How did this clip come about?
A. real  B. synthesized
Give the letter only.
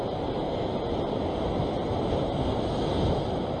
A